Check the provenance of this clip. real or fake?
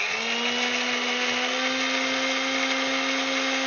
real